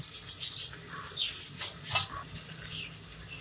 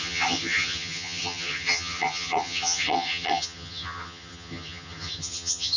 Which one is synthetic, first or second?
second